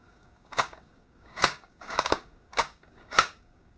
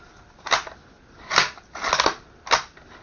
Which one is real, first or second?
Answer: second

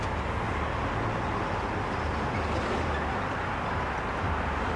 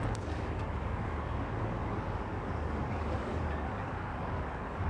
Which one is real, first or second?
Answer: first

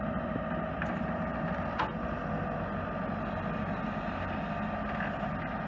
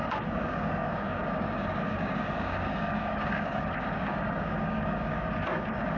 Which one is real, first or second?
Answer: first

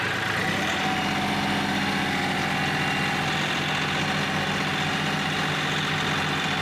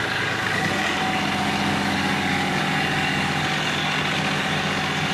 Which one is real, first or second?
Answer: first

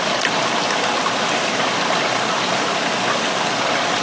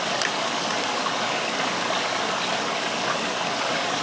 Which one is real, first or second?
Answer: first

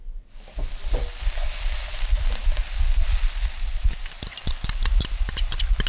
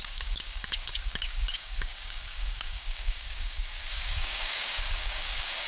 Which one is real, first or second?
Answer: first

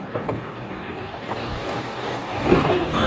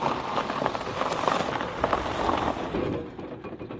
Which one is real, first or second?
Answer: second